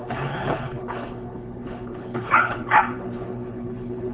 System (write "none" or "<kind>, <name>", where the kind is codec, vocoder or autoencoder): codec, HILCodec